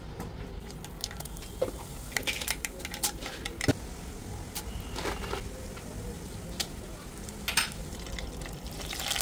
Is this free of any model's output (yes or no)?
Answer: yes